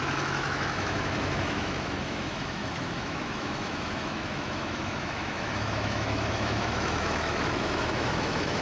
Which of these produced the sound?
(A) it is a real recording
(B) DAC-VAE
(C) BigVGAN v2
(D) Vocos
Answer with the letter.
B